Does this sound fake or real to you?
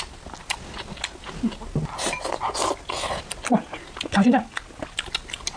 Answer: real